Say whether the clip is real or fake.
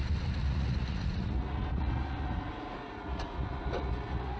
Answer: fake